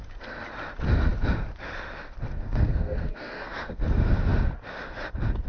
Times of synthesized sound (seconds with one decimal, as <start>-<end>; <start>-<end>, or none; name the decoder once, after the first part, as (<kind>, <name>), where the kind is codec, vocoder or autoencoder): 2.4-3.8 (codec, SNAC)